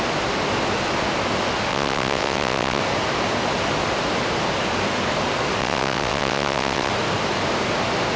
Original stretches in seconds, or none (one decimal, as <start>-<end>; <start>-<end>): 0.0-1.7; 2.8-5.6; 6.9-8.2